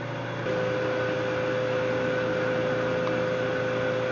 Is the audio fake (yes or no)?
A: no